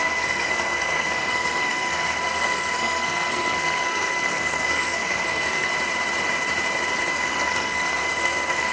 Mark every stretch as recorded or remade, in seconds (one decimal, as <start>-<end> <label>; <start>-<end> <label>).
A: 0.0-5.7 remade; 5.7-7.1 recorded; 7.1-8.7 remade